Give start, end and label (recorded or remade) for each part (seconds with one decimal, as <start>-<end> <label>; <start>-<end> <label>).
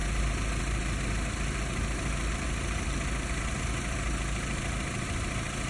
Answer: 0.0-5.7 recorded